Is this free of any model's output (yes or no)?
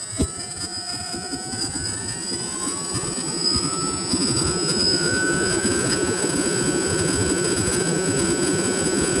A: no